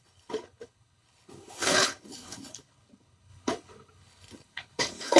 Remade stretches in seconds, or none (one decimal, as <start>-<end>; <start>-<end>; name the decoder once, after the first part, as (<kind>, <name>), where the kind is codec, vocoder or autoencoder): 0.0-5.2 (codec, HILCodec)